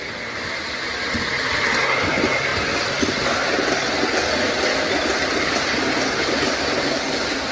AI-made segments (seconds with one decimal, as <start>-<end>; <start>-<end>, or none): none